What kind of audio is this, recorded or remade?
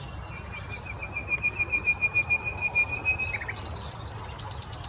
recorded